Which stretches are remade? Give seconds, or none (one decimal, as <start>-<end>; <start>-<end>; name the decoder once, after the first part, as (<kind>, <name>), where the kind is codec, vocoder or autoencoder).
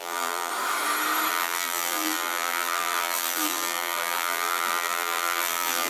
0.0-0.5 (vocoder, BigVGAN v2); 1.3-5.9